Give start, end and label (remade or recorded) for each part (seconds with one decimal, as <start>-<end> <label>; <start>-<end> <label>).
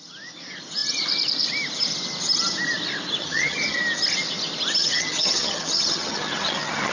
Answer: 0.0-3.2 recorded; 3.2-3.8 remade; 3.8-4.8 recorded; 4.8-6.9 remade